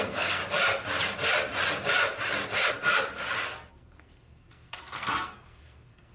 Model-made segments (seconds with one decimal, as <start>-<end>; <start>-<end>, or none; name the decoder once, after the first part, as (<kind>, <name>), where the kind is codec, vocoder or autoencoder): 0.0-0.4 (codec, SNAC); 3.7-6.1